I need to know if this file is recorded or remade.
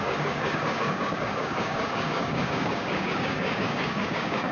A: remade